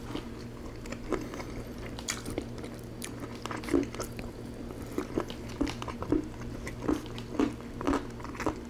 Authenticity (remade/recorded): recorded